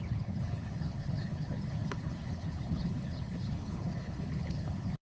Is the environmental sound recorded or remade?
remade